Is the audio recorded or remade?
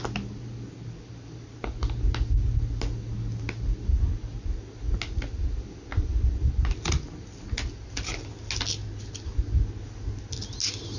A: recorded